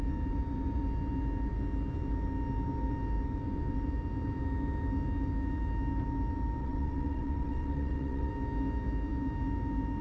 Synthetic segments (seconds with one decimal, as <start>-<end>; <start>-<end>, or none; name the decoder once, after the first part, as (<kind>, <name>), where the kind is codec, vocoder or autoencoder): 6.6-8.3 (vocoder, WaveNeXt)